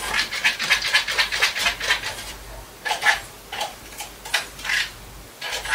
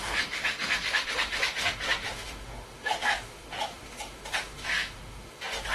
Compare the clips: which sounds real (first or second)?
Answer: first